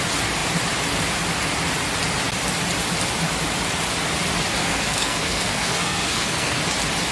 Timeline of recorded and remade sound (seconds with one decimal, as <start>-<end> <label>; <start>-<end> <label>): 0.0-4.6 recorded; 4.6-6.6 remade; 6.6-7.1 recorded